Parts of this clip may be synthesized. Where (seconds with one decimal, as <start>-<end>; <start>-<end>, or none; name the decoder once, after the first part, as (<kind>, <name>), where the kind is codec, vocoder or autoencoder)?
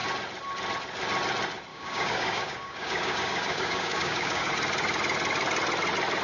1.7-4.5 (codec, DAC)